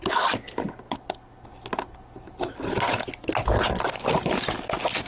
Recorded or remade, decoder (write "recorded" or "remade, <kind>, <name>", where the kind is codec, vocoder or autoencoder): recorded